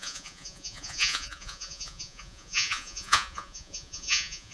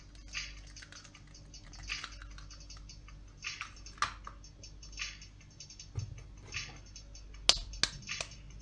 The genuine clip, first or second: second